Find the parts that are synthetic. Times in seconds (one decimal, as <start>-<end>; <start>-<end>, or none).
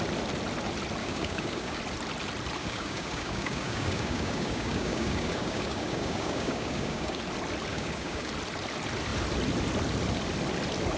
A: 1.0-1.8; 2.6-7.2; 7.7-8.3